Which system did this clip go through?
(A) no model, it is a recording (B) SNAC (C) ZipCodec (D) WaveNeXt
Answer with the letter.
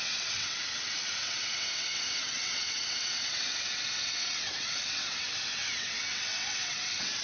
D